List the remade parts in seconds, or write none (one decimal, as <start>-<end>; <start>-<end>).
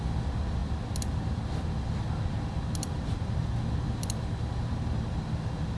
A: none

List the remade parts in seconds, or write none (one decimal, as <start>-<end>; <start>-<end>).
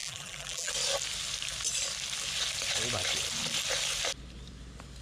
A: 0.0-0.7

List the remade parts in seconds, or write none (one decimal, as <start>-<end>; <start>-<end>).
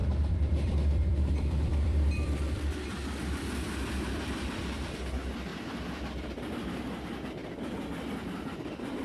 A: 0.0-4.9; 5.5-6.5; 7.4-8.0